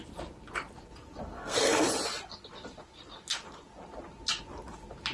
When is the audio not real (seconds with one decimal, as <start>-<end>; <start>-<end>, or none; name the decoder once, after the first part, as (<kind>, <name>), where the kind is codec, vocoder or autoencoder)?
1.4-1.9 (codec, SNAC)